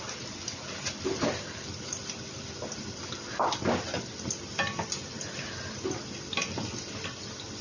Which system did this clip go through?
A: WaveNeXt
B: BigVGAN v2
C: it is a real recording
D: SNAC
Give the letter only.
C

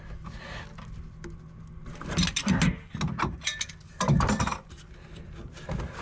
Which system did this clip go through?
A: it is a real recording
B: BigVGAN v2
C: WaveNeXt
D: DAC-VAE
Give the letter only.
A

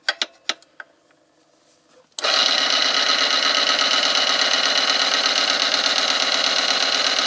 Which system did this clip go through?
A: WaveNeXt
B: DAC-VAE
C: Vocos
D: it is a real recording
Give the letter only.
D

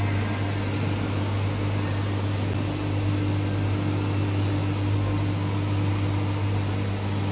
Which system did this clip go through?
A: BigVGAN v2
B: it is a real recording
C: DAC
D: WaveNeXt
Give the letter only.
B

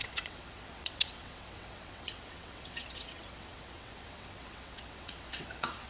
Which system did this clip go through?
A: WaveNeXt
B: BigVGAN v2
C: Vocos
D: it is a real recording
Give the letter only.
A